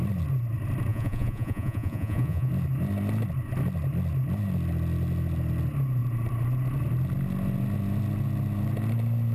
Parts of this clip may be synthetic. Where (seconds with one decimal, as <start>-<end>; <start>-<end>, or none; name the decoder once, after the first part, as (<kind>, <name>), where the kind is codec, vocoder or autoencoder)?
0.9-2.5 (vocoder, Vocos)